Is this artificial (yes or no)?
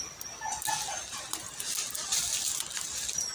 no